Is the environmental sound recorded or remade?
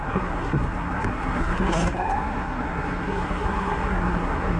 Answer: remade